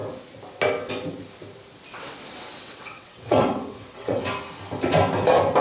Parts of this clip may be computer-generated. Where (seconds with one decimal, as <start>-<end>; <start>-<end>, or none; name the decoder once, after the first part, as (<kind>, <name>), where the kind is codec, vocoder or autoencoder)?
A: 1.9-4.2 (vocoder, WaveNeXt)